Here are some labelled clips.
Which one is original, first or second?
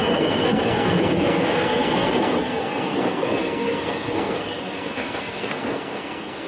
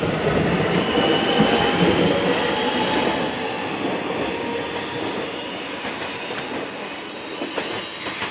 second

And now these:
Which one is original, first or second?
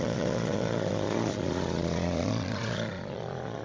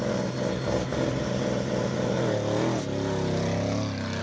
second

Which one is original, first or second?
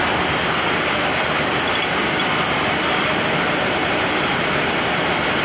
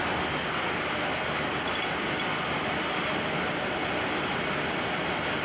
second